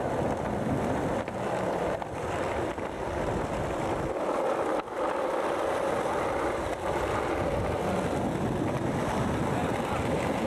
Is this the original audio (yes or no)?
yes